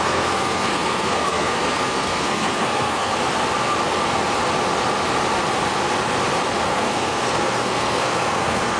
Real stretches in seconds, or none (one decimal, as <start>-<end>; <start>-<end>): 3.1-6.7